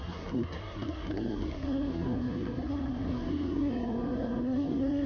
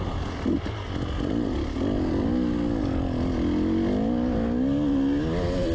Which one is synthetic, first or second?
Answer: first